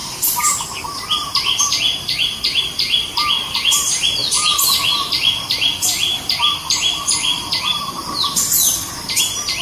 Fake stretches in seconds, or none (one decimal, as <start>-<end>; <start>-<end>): 4.2-9.2